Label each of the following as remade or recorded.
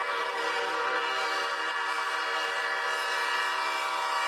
recorded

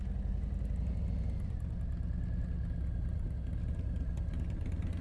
recorded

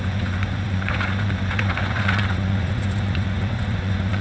remade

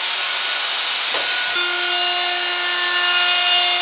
recorded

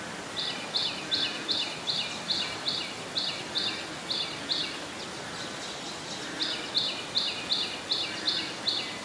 recorded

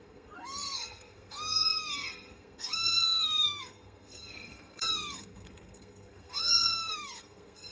remade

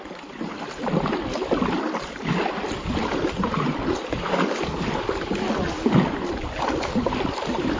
recorded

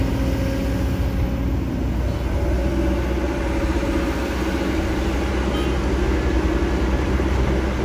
recorded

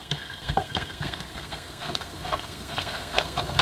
remade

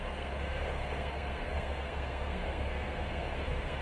remade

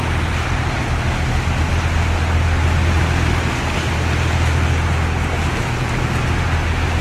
recorded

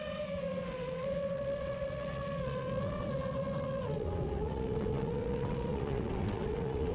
remade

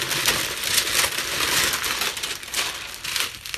recorded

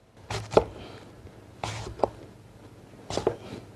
recorded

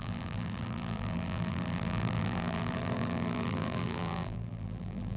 remade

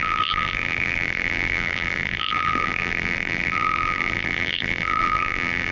remade